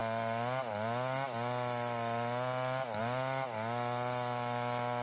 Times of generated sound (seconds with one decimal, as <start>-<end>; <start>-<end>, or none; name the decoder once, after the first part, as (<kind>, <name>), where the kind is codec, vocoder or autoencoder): none